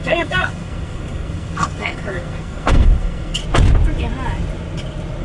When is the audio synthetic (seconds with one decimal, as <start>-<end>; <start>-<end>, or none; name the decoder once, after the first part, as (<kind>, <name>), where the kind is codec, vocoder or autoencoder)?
0.0-3.4 (codec, SNAC)